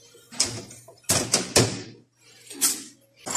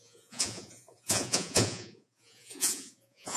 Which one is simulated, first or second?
second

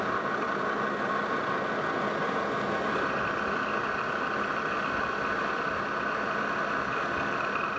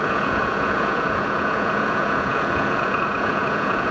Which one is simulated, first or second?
second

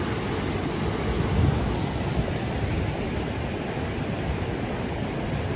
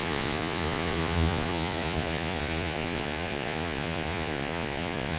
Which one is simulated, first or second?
second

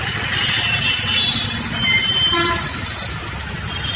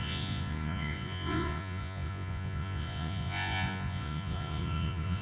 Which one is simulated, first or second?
second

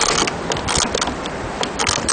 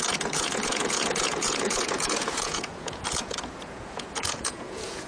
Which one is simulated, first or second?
second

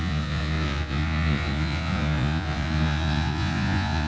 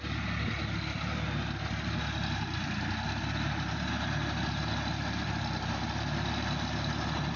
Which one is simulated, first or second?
first